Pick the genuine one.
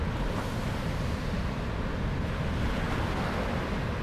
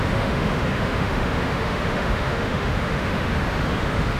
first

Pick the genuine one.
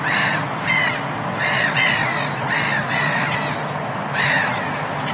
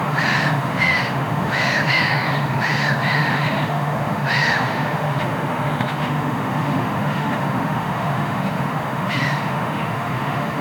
first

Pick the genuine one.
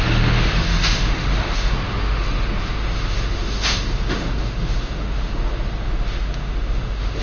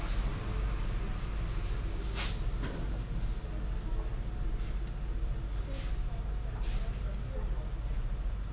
second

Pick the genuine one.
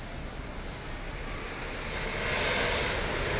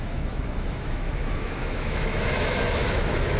first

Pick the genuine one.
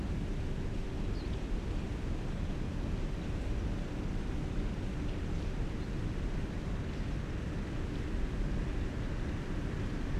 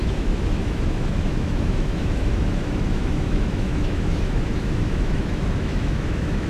first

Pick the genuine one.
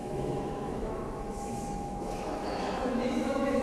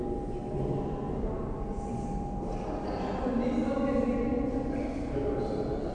second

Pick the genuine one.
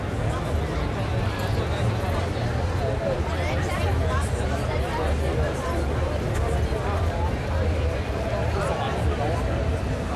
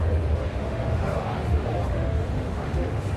first